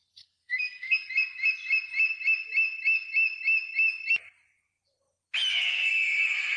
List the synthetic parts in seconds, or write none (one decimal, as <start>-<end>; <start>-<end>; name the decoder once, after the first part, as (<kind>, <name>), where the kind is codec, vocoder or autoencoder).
0.4-1.1 (codec, SNAC); 5.5-6.6